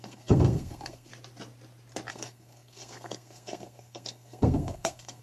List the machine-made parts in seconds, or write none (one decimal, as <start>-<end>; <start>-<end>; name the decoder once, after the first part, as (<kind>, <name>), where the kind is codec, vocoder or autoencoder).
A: 0.0-1.1 (codec, SNAC); 2.1-5.2